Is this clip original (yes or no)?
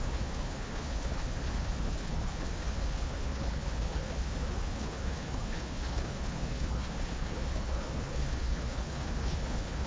no